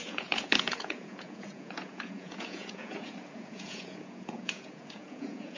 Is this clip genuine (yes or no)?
no